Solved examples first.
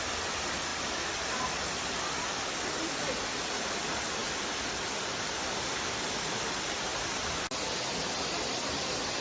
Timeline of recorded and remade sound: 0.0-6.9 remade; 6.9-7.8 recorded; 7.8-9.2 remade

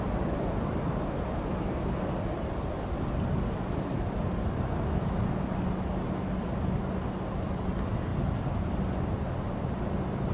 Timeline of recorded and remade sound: 0.0-10.3 recorded

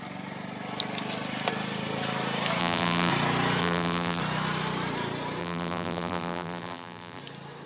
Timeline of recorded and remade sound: 0.0-2.6 recorded; 2.6-3.1 remade; 3.1-3.6 recorded; 3.6-4.2 remade; 4.2-5.4 recorded; 5.4-7.2 remade; 7.2-7.7 recorded

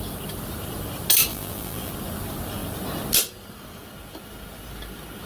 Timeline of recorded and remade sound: 0.0-1.3 recorded; 1.3-1.9 remade; 1.9-5.3 recorded

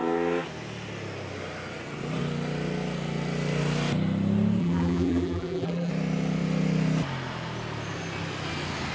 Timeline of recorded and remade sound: 0.0-4.6 recorded; 4.6-5.9 remade; 5.9-8.9 recorded

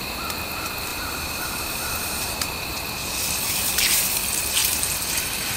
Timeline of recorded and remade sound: 0.0-0.9 recorded; 0.9-2.8 remade; 2.8-4.6 recorded; 4.6-5.6 remade